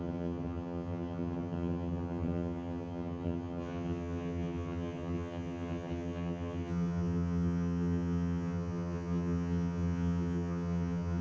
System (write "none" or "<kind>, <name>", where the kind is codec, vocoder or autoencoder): vocoder, HiFi-GAN